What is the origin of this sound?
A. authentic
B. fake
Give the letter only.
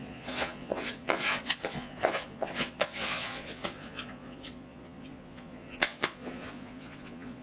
B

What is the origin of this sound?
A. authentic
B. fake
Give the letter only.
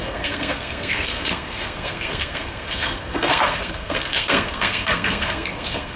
B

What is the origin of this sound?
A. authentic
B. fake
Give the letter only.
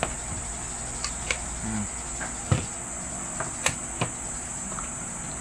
A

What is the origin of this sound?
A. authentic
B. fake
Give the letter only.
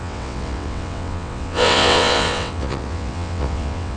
B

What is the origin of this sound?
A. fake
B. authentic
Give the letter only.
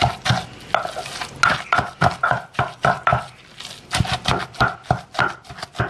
B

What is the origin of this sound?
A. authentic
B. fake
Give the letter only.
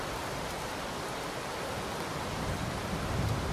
A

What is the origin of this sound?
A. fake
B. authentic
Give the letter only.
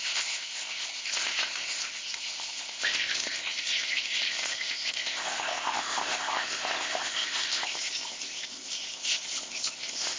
A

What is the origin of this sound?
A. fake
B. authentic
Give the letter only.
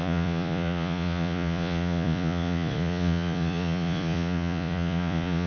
A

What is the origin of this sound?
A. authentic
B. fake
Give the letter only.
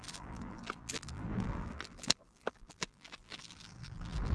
B